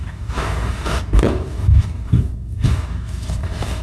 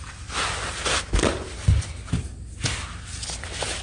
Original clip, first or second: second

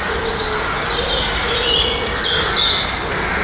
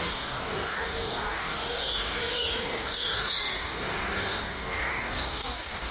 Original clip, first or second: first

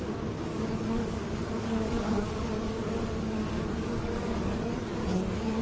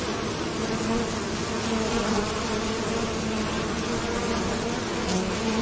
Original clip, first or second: second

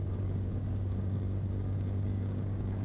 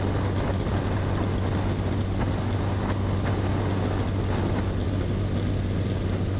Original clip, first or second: second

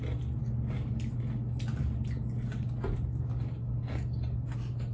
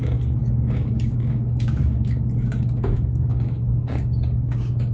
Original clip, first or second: first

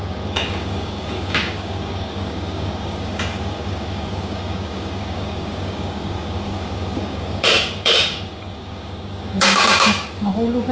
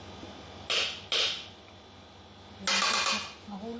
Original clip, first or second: second